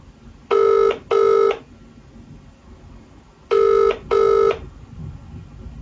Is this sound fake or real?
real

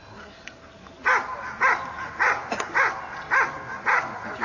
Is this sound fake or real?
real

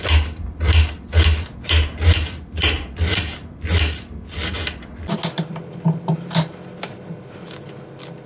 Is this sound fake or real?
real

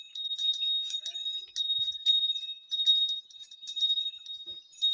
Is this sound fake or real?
fake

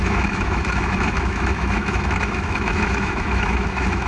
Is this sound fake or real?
fake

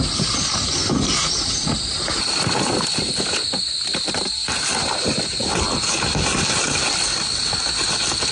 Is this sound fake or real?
real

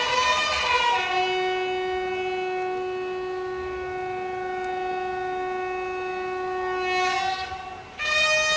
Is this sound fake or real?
real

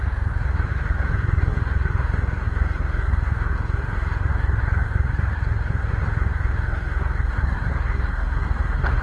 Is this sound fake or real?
fake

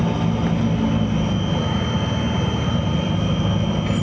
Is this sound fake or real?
real